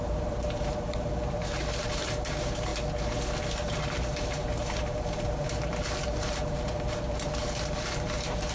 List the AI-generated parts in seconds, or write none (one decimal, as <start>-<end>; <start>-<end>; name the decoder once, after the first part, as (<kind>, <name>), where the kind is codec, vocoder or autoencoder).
0.0-2.7 (vocoder, BigVGAN v2); 3.5-8.5